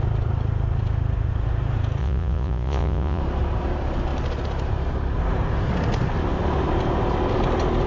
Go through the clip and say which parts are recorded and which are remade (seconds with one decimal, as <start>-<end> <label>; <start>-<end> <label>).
0.0-2.0 recorded; 2.0-3.2 remade; 3.2-7.9 recorded